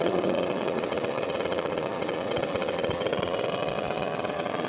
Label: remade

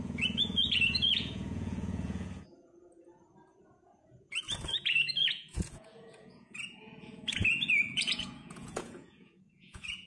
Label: remade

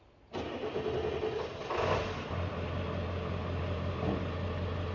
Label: recorded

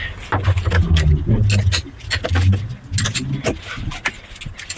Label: recorded